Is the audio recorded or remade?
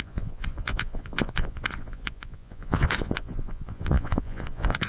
remade